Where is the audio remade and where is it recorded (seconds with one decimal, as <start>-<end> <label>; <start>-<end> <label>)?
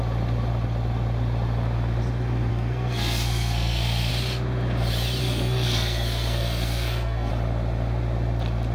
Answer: 0.0-2.5 recorded; 2.5-4.1 remade; 4.1-5.2 recorded; 5.2-7.3 remade; 7.3-8.7 recorded